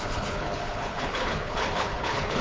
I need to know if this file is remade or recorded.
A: remade